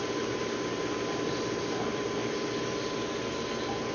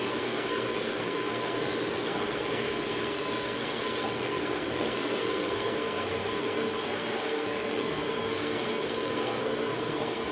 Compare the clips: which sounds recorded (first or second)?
first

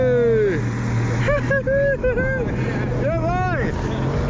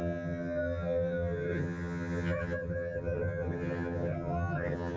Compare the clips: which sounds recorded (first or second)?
first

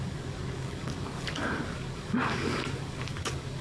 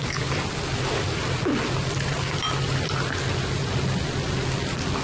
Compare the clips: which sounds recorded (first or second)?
second